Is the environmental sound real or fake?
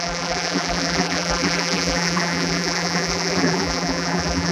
fake